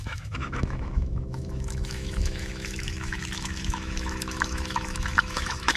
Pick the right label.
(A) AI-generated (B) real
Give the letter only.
A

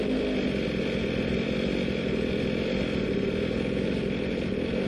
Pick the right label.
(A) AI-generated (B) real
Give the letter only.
B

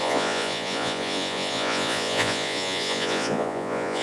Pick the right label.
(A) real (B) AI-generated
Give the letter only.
B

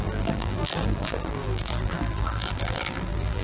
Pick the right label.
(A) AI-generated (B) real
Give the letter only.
A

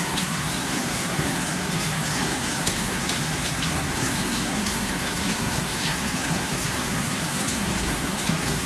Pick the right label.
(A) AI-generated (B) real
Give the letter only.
A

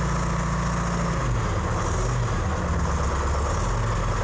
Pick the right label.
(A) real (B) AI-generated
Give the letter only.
A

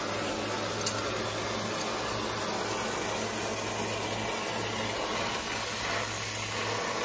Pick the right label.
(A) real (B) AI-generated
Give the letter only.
A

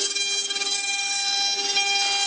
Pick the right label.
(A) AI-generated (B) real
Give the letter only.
B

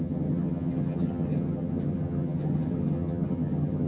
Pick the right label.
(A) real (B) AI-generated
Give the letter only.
B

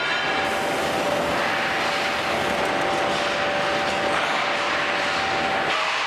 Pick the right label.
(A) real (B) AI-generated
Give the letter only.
A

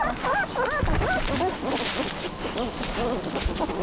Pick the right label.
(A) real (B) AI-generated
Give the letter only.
A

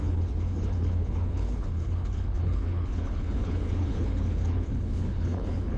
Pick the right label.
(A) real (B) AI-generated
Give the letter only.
B